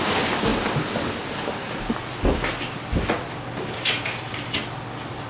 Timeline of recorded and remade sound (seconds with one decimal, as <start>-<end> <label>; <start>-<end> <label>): 0.0-5.3 recorded